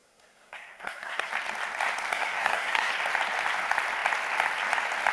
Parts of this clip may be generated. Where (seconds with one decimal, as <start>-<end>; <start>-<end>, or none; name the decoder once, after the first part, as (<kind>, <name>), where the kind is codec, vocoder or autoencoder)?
0.0-1.3 (codec, SNAC); 2.1-2.9